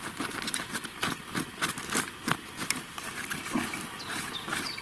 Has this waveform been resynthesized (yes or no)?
no